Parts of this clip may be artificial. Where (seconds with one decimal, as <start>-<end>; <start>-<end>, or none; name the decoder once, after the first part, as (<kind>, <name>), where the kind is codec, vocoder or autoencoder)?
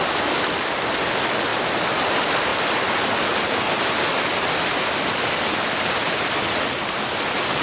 none